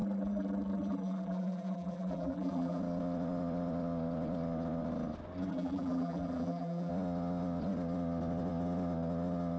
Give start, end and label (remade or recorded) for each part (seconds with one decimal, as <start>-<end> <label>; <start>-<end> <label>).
0.0-2.8 remade; 2.8-5.5 recorded; 5.5-6.9 remade; 6.9-9.6 recorded